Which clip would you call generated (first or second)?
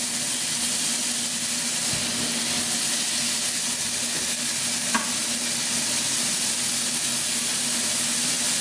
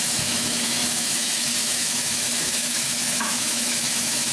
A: second